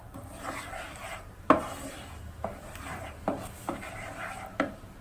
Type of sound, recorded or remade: remade